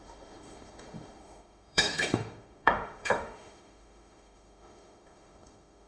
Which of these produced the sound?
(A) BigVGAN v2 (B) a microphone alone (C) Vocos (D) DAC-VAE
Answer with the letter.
D